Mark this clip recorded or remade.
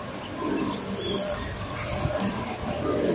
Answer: recorded